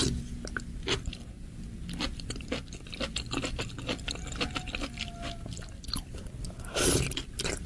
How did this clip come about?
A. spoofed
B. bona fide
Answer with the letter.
B